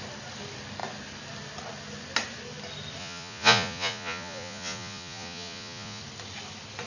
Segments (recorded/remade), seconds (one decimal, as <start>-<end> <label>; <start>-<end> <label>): 0.0-3.0 recorded; 3.0-6.0 remade; 6.0-6.9 recorded